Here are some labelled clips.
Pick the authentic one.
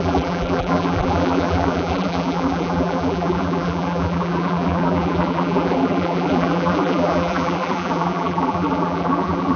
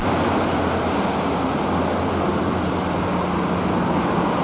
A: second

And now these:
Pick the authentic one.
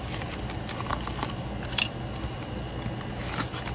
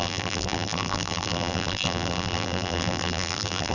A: first